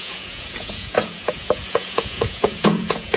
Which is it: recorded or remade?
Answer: remade